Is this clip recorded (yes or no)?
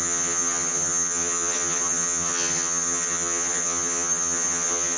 no